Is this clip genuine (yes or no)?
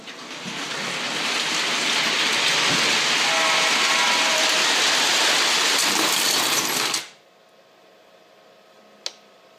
yes